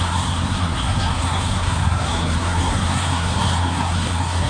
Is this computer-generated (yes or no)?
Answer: yes